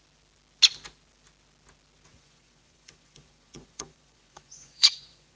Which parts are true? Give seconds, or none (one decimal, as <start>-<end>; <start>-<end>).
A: 0.0-2.1